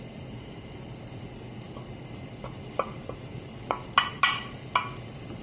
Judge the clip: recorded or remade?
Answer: recorded